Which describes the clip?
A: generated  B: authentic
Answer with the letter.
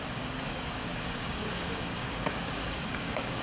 A